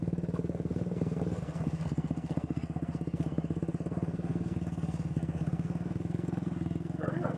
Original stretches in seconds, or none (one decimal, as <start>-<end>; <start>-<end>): none